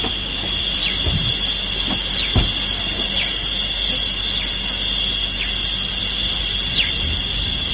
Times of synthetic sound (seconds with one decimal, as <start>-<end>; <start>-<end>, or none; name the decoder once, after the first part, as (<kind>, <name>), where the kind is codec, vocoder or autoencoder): 0.0-0.8 (vocoder, BigVGAN v2); 5.4-7.7